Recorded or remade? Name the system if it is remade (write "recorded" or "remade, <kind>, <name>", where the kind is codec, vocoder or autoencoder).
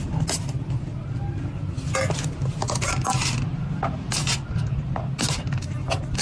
recorded